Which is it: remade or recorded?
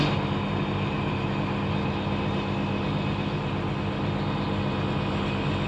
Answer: recorded